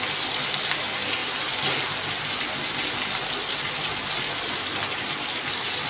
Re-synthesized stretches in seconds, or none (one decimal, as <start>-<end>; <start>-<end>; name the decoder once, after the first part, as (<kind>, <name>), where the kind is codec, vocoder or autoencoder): none